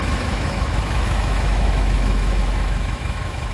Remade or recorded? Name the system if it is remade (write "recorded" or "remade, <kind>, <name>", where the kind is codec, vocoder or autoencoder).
remade, autoencoder, DAC-VAE